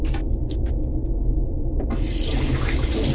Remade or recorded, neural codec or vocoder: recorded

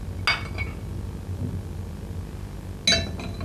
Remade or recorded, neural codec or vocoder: recorded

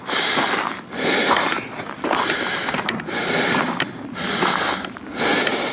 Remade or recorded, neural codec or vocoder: recorded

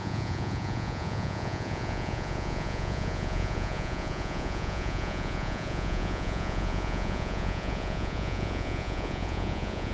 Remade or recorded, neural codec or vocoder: remade, vocoder, Vocos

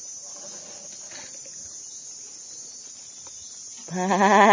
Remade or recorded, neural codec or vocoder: recorded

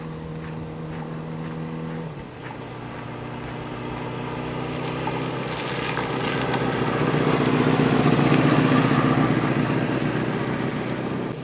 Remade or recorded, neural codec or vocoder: recorded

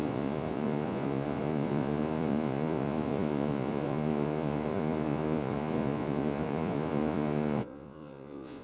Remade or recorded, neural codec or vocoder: remade, vocoder, Vocos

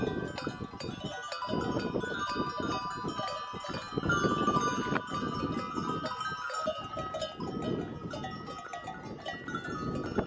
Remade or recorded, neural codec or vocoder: recorded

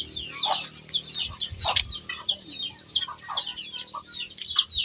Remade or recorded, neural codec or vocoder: recorded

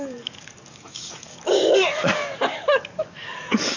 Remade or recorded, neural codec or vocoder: remade, codec, DAC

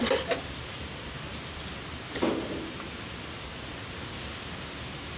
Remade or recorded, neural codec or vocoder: recorded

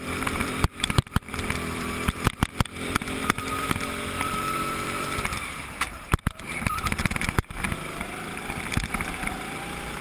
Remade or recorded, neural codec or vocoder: remade, vocoder, BigVGAN v2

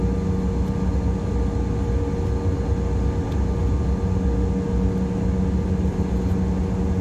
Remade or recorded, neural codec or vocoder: recorded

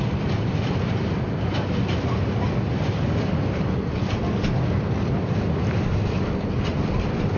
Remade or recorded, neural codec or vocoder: recorded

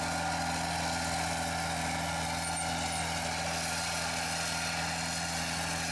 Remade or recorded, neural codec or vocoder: recorded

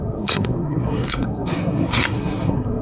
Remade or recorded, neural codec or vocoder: remade, codec, SNAC